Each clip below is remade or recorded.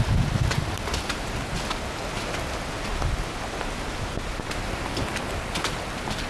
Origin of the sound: recorded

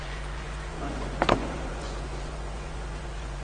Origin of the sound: remade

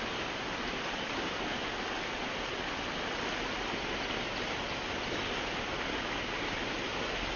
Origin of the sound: recorded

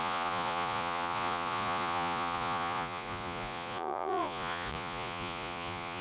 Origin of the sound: remade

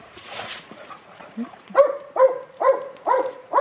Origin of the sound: remade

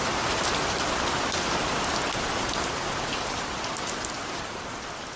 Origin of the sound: recorded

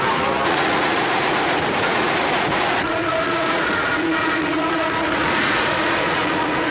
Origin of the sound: remade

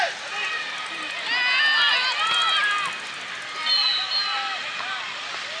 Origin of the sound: recorded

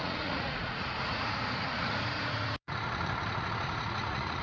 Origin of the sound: remade